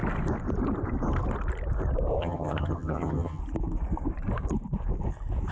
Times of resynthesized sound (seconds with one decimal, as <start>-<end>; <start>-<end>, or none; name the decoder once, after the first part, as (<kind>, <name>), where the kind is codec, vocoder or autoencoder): 2.2-3.4 (vocoder, HiFi-GAN)